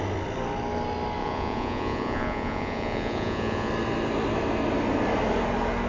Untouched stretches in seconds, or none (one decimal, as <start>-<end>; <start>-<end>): 0.0-1.2; 3.7-5.9